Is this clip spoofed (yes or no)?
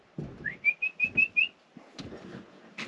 no